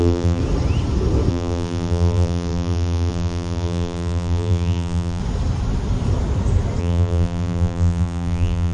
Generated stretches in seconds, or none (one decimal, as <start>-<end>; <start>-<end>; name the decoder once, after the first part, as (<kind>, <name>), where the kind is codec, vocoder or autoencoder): 0.0-0.4 (vocoder, BigVGAN v2); 1.3-5.2; 6.8-8.7